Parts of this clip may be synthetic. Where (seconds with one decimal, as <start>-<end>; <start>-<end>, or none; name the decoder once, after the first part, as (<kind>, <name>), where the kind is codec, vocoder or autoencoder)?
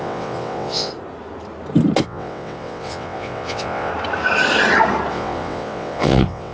0.0-0.9 (vocoder, WaveNeXt); 2.0-3.9; 5.1-6.5